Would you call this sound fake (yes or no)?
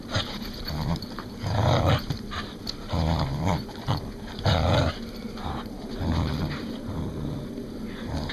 yes